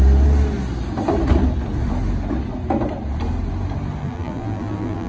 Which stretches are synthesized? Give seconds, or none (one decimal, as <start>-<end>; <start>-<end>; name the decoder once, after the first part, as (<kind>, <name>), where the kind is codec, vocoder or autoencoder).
4.0-5.1 (vocoder, BigVGAN v2)